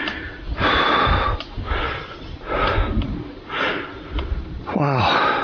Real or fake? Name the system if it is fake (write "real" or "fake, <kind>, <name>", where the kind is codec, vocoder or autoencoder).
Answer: fake, vocoder, BigVGAN v2